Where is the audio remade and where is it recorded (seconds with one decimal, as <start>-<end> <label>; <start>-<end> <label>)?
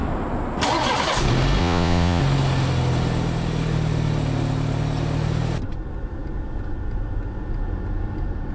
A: 0.0-1.6 recorded; 1.6-2.2 remade; 2.2-8.5 recorded